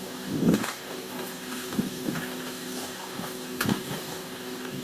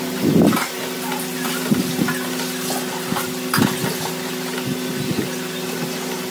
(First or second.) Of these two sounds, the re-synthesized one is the first